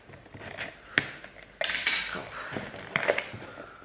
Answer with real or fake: real